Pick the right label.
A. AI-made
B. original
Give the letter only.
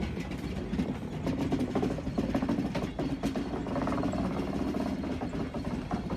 B